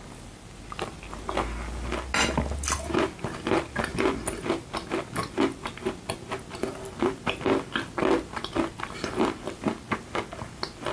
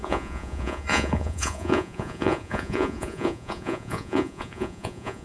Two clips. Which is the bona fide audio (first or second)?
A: first